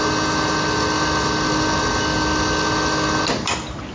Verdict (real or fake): real